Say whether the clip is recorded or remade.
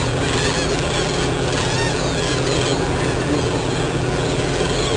remade